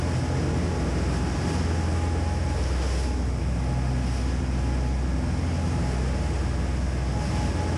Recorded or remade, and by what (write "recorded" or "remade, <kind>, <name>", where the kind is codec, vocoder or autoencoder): recorded